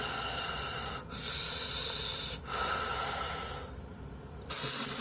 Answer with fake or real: real